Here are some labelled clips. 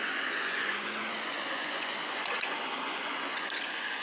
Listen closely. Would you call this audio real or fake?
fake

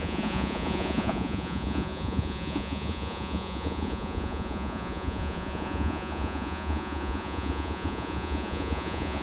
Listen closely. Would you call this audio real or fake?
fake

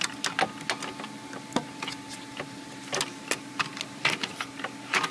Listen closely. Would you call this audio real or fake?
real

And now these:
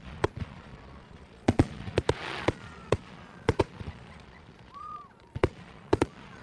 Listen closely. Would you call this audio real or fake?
fake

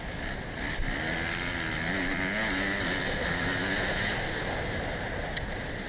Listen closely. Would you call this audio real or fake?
real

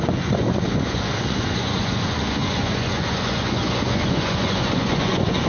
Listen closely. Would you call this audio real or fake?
fake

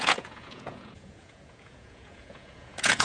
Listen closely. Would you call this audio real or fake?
fake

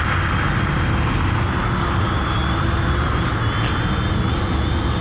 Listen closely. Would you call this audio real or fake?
real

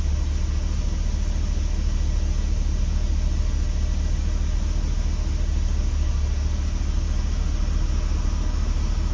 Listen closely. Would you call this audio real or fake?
real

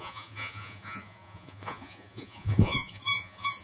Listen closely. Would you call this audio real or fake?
fake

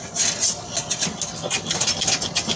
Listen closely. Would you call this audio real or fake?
real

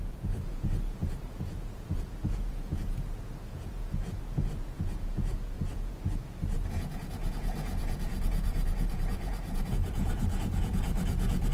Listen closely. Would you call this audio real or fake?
fake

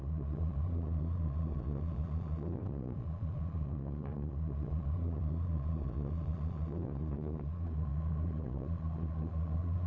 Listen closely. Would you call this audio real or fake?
fake